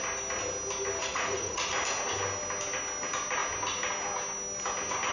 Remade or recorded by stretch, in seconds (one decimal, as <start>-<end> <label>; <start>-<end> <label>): 0.0-1.0 recorded; 1.0-1.7 remade; 1.7-5.1 recorded